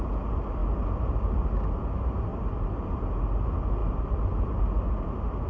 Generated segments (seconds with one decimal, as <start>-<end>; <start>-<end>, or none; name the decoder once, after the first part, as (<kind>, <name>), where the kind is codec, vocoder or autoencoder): none